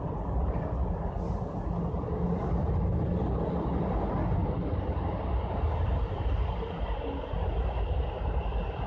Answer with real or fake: real